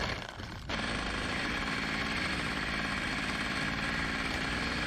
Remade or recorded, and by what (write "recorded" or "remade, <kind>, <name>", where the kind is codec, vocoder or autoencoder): recorded